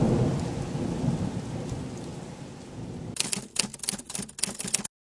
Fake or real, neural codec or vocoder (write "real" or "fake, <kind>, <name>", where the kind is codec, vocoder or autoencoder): real